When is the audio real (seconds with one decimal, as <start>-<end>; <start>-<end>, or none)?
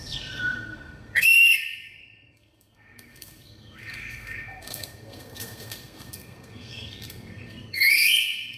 none